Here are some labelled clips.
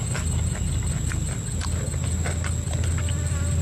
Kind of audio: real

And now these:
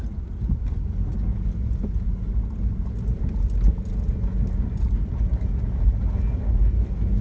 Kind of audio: real